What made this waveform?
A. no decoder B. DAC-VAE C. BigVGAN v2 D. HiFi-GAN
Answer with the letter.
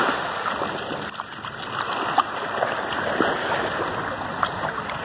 A